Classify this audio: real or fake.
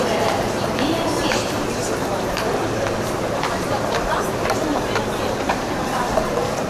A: fake